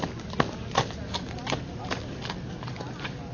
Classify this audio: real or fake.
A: real